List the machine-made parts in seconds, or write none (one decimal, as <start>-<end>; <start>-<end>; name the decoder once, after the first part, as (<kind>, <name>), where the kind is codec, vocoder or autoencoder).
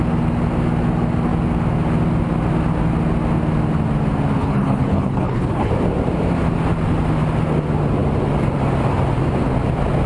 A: 4.4-5.7 (codec, HILCodec)